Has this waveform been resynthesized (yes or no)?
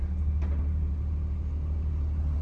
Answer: no